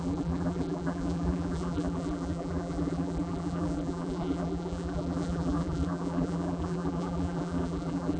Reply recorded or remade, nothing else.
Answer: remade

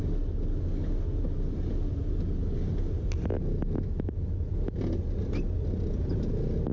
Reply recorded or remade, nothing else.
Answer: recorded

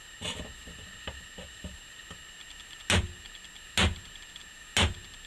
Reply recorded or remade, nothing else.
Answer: recorded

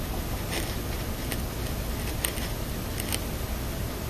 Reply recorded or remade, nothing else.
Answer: recorded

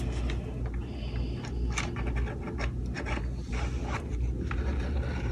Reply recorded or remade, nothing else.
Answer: recorded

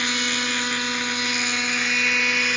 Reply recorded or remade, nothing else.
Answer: recorded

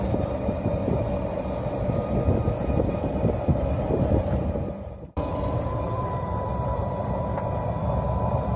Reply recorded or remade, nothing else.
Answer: remade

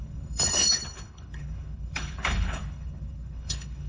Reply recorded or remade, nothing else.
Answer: remade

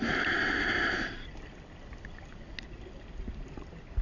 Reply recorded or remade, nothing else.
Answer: recorded